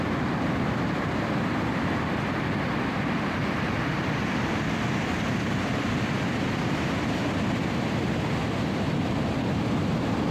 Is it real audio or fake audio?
real